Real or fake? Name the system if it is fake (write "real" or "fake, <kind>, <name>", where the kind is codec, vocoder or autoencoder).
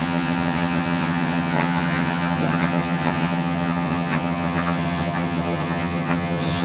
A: fake, vocoder, HiFi-GAN